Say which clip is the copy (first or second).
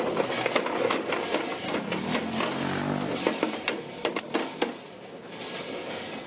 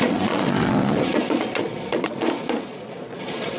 second